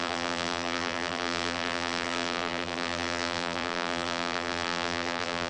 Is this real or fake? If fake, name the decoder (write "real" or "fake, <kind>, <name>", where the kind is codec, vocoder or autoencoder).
fake, vocoder, BigVGAN v2